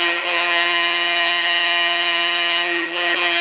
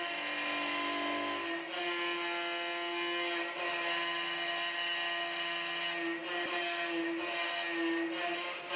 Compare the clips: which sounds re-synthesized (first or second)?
first